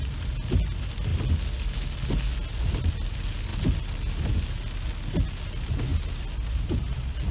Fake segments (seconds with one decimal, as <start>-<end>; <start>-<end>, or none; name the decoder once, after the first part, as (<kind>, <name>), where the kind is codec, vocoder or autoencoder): none